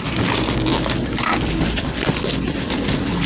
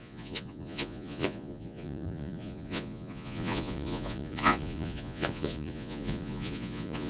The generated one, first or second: second